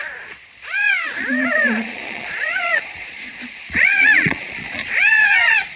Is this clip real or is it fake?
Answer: fake